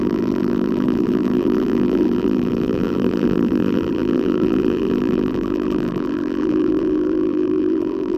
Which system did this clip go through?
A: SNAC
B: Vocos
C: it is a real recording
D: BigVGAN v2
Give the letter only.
D